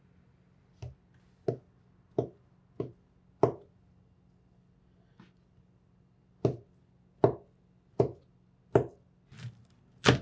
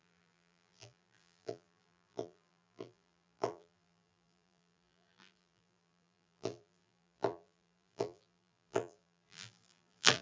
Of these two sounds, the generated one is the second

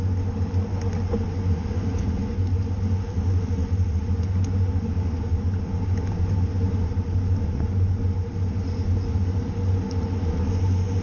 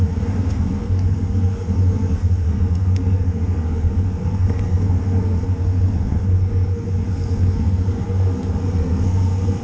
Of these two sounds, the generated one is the second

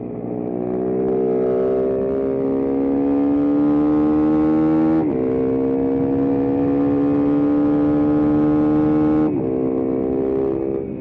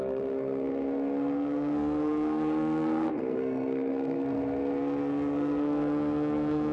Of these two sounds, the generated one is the second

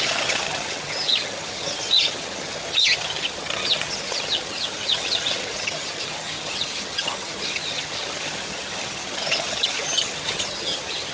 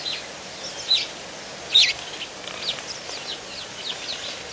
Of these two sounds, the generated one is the first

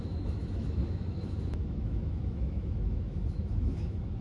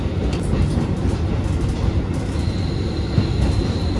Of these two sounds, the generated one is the first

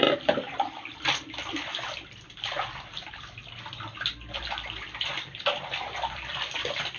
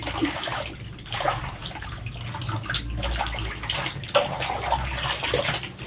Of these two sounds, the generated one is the first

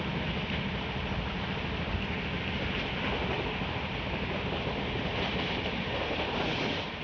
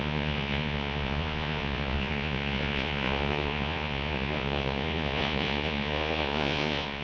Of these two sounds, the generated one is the second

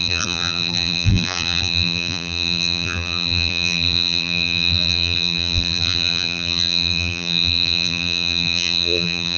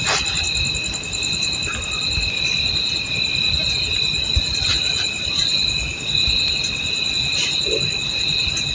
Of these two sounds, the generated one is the first